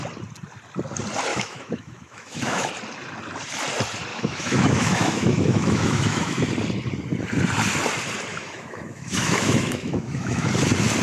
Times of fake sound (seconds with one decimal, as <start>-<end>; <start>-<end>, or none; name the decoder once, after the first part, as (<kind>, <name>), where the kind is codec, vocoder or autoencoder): 1.3-2.7 (autoencoder, DAC-VAE); 4.1-6.5; 8.3-10.5